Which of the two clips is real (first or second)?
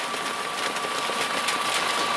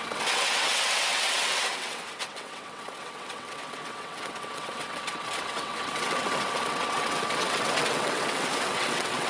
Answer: first